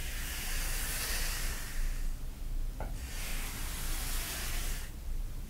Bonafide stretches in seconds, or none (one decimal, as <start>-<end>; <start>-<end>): 0.0-2.7; 3.3-4.9